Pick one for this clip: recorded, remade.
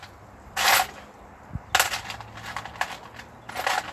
recorded